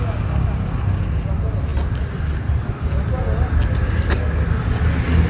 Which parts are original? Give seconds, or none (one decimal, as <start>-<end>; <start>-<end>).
0.0-5.3